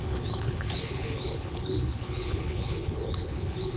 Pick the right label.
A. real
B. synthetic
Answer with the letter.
B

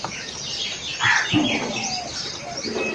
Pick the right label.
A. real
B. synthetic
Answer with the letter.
A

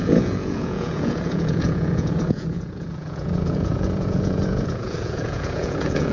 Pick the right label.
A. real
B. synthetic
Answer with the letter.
B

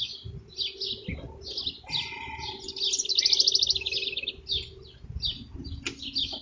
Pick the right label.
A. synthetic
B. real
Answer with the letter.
B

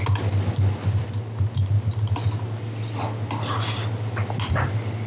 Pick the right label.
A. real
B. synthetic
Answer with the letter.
A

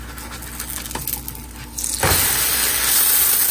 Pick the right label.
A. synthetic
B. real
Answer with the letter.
B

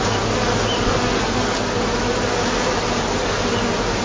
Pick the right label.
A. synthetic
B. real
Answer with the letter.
B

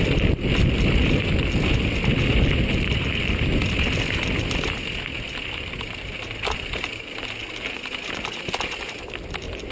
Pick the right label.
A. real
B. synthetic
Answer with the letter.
A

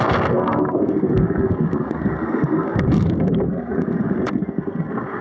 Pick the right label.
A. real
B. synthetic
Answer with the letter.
B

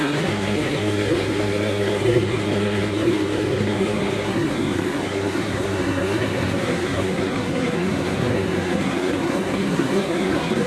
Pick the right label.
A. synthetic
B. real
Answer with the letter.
A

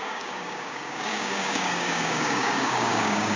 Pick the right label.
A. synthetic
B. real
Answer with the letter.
A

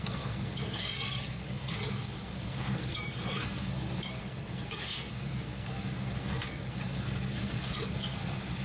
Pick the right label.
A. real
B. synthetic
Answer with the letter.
B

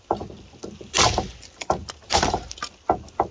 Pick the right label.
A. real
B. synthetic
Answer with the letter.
A